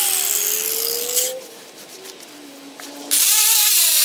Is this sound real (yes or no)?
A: yes